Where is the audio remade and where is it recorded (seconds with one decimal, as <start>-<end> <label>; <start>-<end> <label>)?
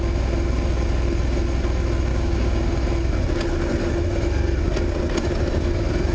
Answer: 0.0-2.1 recorded; 2.1-2.8 remade; 2.8-6.1 recorded